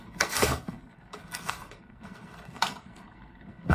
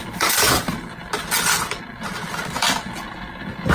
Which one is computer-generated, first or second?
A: first